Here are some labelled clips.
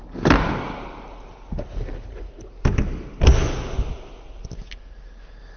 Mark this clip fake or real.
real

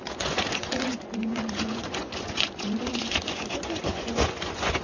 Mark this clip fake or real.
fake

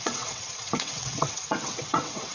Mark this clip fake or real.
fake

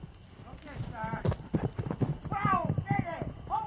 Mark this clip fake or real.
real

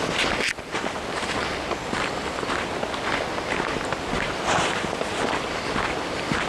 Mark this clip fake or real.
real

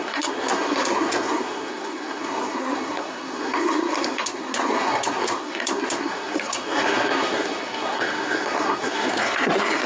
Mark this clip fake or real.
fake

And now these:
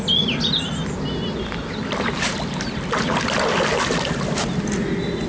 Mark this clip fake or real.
real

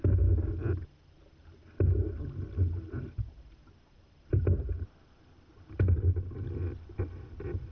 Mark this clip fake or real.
real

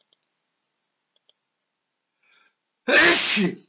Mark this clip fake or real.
real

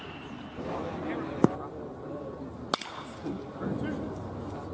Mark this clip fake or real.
real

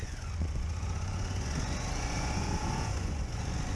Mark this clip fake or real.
fake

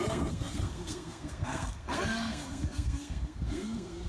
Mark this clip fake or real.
fake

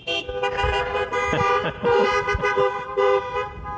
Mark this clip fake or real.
real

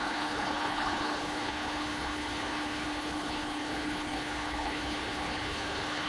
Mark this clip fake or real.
fake